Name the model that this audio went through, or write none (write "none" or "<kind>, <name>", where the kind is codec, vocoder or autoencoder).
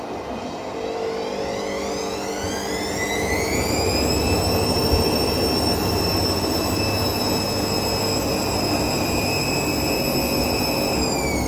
none